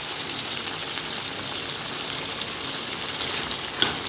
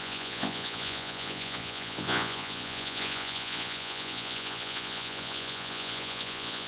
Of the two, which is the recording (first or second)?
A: first